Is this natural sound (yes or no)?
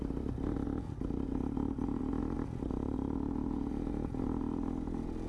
yes